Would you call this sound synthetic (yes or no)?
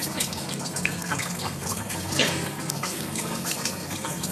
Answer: yes